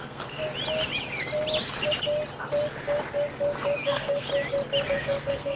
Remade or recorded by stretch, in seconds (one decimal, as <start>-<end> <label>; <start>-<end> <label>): 0.0-0.4 remade; 0.4-3.8 recorded; 3.8-4.3 remade; 4.3-4.9 recorded; 4.9-5.6 remade